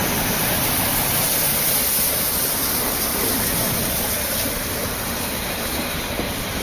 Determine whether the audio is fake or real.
fake